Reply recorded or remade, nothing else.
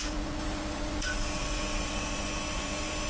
remade